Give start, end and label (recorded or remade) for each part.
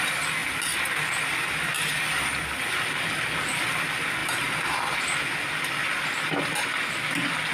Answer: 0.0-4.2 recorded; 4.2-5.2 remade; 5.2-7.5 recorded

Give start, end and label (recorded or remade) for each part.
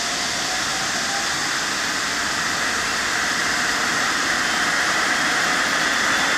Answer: 0.0-6.4 recorded